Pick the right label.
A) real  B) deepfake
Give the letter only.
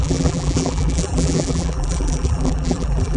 B